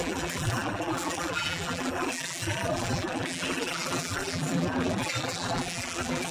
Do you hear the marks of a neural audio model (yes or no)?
yes